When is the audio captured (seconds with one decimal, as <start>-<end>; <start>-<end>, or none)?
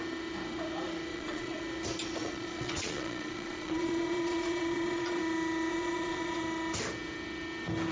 0.0-1.1; 1.6-2.2; 5.2-5.7; 6.4-7.9